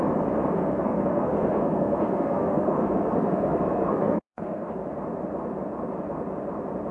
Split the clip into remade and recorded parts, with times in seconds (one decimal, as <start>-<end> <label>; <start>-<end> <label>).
0.0-0.6 recorded; 0.6-4.7 remade; 4.7-6.9 recorded